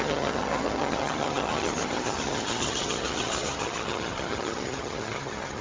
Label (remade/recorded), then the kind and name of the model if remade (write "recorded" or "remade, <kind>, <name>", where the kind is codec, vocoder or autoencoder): remade, vocoder, HiFi-GAN